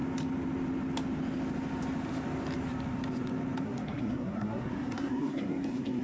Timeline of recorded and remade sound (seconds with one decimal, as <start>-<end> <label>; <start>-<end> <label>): 0.0-3.6 recorded; 3.6-6.0 remade